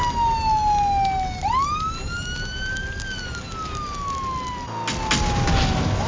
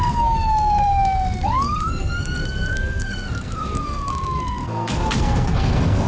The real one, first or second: first